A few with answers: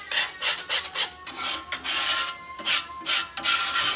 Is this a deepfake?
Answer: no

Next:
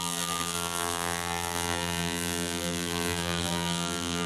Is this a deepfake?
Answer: yes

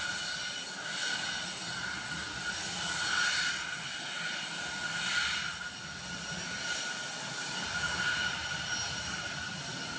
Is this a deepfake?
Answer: no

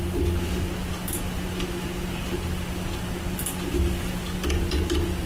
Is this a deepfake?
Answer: no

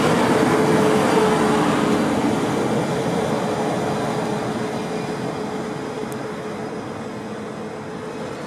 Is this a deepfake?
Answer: no